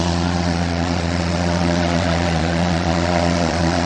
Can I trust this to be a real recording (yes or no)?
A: no